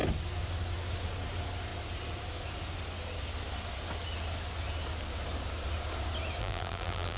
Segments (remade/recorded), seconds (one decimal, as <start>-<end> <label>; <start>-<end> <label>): 0.0-6.4 recorded; 6.4-7.2 remade